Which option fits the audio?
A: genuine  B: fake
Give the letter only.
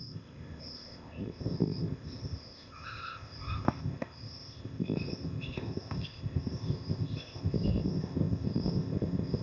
B